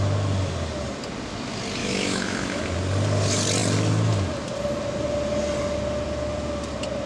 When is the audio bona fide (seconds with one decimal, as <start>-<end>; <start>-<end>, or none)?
0.0-1.8; 2.6-7.1